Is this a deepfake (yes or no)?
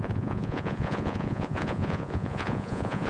yes